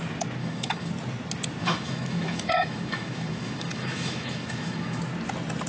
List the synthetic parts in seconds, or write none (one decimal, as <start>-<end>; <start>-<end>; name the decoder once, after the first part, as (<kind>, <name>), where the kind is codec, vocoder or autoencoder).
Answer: 0.4-0.9 (autoencoder, DAC-VAE); 1.6-5.0